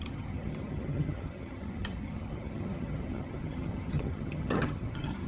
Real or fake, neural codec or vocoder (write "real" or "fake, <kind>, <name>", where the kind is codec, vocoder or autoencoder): fake, vocoder, HiFi-GAN